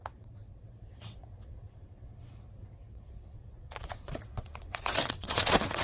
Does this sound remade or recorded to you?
remade